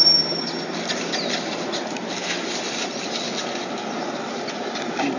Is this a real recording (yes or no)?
yes